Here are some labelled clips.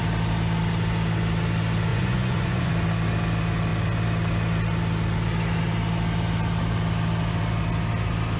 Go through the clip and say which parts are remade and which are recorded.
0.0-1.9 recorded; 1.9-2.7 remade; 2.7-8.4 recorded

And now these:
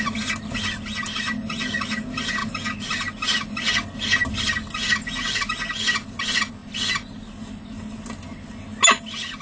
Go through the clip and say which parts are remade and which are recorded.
0.0-9.4 recorded

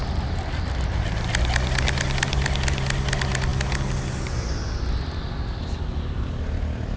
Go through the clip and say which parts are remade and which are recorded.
0.0-7.0 recorded

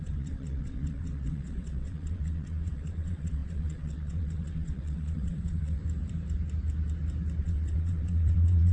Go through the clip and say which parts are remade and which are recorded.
0.0-5.8 remade; 5.8-7.4 recorded; 7.4-8.7 remade

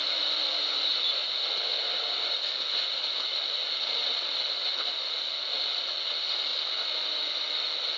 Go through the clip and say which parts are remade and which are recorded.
0.0-0.7 remade; 0.7-3.6 recorded; 3.6-4.4 remade; 4.4-8.0 recorded